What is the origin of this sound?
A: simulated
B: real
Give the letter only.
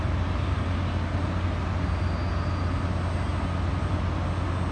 B